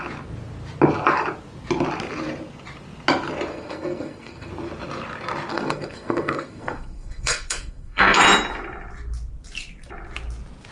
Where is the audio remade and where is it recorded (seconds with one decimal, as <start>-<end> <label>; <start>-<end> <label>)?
0.0-3.5 recorded; 3.5-4.5 remade; 4.5-5.5 recorded; 5.5-8.2 remade; 8.2-10.7 recorded